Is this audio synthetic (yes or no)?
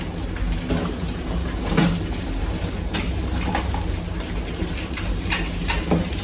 no